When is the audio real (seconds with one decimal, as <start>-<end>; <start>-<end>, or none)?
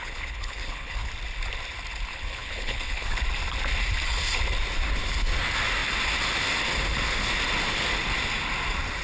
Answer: 1.1-2.1; 3.2-9.0